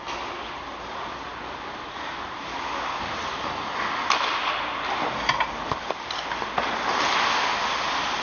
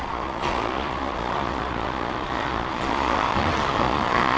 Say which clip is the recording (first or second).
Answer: first